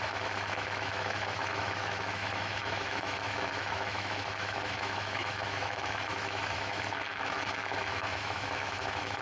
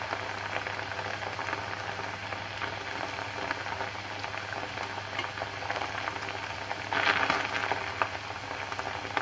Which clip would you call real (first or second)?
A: second